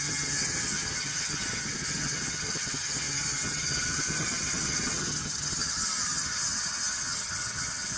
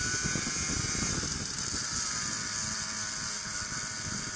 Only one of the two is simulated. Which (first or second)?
first